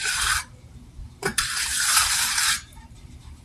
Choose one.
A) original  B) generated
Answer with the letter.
B